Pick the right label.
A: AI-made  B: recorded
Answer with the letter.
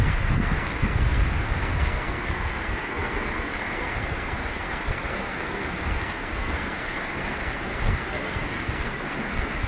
A